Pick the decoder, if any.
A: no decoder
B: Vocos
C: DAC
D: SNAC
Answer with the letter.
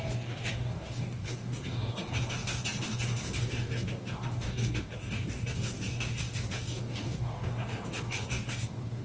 C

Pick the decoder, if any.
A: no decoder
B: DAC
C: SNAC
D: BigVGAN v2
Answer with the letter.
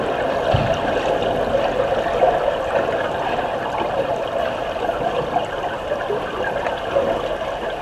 A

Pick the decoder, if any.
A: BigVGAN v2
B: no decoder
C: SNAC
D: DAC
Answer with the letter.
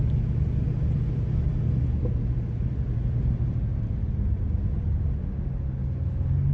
B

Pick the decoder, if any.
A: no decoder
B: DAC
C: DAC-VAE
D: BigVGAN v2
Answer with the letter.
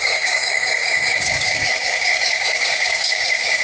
B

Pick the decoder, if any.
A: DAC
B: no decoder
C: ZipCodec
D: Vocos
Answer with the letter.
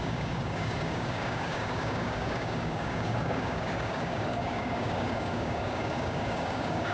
A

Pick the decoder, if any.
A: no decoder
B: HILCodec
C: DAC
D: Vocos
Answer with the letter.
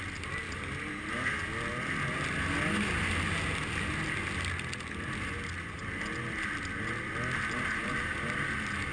A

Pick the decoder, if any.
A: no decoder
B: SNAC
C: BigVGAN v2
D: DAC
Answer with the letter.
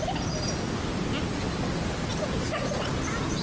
A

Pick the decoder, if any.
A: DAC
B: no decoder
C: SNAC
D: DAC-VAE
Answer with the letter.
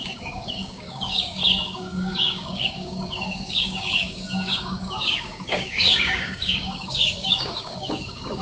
A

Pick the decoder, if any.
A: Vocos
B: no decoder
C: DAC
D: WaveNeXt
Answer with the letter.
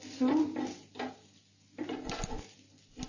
B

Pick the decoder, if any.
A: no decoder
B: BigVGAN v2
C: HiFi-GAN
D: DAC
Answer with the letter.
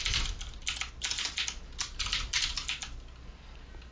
A